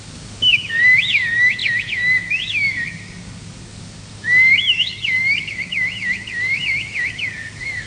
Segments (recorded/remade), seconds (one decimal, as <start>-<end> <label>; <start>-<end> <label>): 0.0-7.9 remade